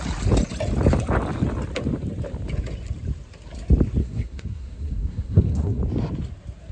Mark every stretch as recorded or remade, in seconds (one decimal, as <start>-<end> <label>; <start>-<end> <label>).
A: 0.0-4.0 recorded; 4.0-5.8 remade; 5.8-6.7 recorded

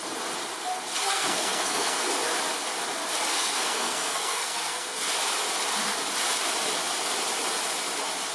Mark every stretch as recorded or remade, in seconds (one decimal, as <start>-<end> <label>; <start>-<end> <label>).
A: 0.0-1.0 recorded; 1.0-2.1 remade; 2.1-3.3 recorded; 3.3-5.1 remade; 5.1-8.3 recorded

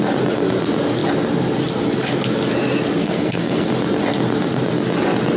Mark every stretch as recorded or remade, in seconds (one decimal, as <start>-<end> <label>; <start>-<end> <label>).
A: 0.0-3.0 recorded; 3.0-3.7 remade; 3.7-5.4 recorded

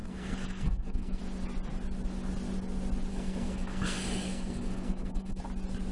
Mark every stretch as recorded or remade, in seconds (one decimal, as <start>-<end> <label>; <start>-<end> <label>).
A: 0.0-1.2 remade; 1.2-3.1 recorded; 3.1-5.4 remade; 5.4-5.9 recorded

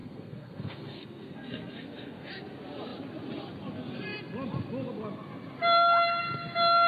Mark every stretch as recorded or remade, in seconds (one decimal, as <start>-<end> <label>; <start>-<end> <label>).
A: 0.0-2.3 remade; 2.3-6.9 recorded

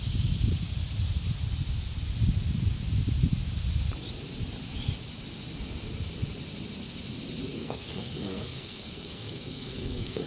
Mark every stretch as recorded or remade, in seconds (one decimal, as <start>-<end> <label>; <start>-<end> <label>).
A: 0.0-7.5 recorded; 7.5-10.3 remade

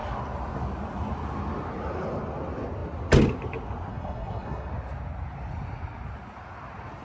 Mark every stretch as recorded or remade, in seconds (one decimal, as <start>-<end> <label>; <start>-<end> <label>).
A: 0.0-3.9 recorded; 3.9-4.7 remade; 4.7-7.0 recorded

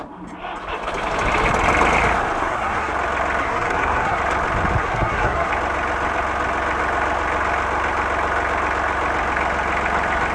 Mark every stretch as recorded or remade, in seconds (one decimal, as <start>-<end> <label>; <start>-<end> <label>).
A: 0.0-2.4 recorded; 2.4-2.9 remade; 2.9-3.4 recorded; 3.4-4.2 remade; 4.2-4.8 recorded; 4.8-5.5 remade; 5.5-10.3 recorded